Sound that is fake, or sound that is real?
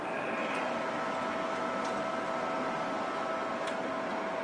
real